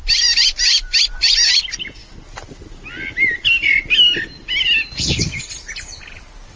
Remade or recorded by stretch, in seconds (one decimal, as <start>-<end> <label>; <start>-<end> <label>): 0.0-6.6 recorded